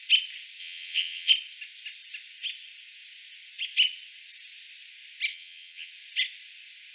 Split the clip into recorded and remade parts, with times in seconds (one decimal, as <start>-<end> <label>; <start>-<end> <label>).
0.0-0.6 recorded; 0.6-1.3 remade; 1.3-5.3 recorded; 5.3-5.9 remade; 5.9-6.9 recorded